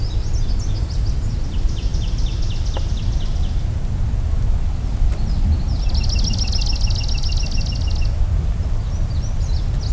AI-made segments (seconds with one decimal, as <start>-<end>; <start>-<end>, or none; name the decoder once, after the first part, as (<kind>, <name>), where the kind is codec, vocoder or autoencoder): none